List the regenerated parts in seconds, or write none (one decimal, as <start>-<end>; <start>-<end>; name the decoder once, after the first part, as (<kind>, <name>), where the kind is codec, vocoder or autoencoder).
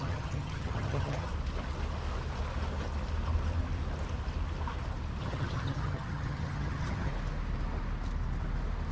0.0-1.3 (vocoder, HiFi-GAN); 5.2-7.1